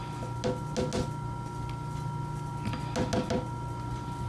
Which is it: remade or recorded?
recorded